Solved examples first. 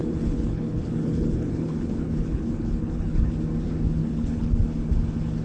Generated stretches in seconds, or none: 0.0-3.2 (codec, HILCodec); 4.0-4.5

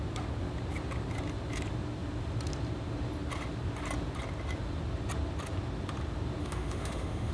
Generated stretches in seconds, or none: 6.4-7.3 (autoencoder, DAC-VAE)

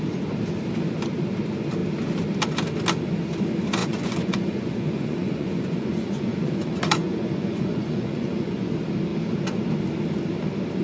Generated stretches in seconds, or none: 3.8-8.7 (vocoder, Vocos)

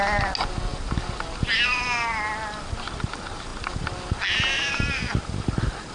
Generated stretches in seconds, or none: none

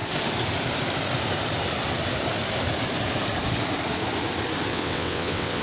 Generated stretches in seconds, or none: 4.7-5.6 (vocoder, WaveNeXt)

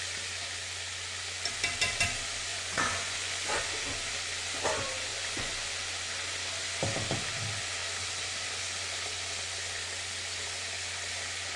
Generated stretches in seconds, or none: 2.5-3.6 (vocoder, Vocos); 5.1-5.7